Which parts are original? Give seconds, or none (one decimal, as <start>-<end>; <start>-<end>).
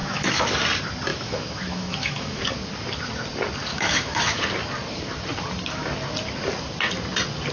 0.5-1.1; 2.4-3.7; 4.4-7.5